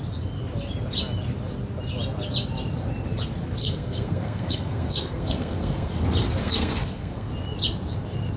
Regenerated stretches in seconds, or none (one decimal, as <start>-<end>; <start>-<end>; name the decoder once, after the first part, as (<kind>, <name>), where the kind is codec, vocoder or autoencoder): 3.6-5.9 (codec, SNAC); 6.4-7.3